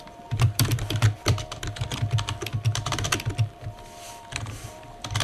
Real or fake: fake